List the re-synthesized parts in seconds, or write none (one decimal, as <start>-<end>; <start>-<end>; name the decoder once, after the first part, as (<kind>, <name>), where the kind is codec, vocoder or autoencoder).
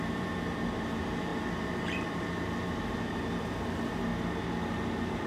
0.0-4.1 (vocoder, BigVGAN v2); 4.7-5.3